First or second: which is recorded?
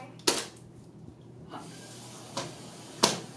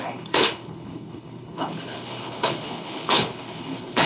first